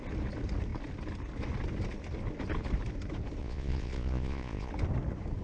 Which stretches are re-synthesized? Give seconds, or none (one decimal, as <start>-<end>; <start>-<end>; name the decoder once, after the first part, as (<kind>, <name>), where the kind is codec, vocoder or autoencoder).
3.4-4.7 (vocoder, Vocos)